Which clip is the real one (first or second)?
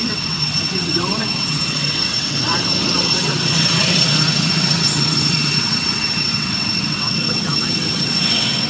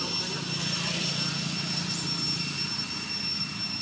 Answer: second